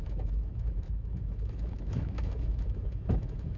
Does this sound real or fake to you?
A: fake